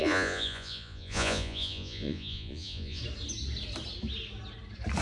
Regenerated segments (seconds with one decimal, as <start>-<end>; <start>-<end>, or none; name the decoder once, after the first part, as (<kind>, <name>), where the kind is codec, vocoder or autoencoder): 0.0-3.0 (vocoder, Vocos)